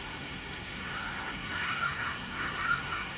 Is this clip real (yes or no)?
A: no